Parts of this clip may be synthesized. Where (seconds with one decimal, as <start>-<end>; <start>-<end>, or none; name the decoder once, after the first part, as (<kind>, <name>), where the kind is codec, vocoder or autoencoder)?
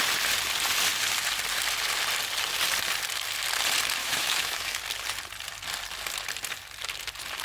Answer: 4.0-4.8 (autoencoder, DAC-VAE)